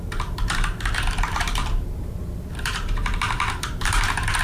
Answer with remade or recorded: remade